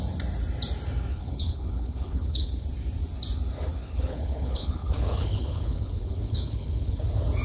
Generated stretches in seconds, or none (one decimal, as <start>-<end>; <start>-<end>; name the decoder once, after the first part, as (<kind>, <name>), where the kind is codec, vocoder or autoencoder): 1.1-2.6 (codec, HILCodec); 3.8-7.0